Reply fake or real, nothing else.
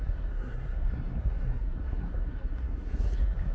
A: fake